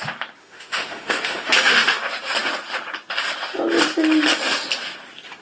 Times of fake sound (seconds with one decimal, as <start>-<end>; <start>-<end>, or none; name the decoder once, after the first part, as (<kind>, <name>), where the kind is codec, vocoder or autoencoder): 0.4-2.0 (autoencoder, DAC-VAE)